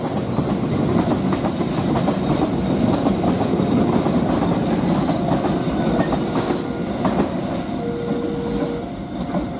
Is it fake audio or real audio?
real